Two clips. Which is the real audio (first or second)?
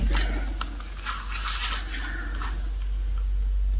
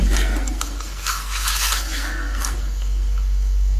first